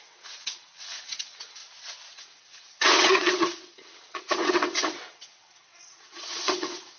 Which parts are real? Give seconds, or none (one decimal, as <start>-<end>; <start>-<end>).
1.6-2.1